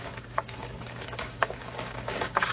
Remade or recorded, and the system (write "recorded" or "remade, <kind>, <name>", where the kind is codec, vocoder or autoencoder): remade, codec, DAC